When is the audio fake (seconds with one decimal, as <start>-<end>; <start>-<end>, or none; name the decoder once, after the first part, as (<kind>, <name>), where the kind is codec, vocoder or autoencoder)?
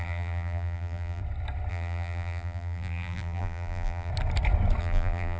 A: 0.0-1.2 (vocoder, BigVGAN v2); 1.7-4.1; 4.8-5.4